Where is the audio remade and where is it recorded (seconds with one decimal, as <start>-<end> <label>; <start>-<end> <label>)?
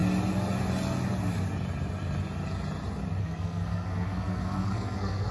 0.0-3.2 recorded; 3.2-5.3 remade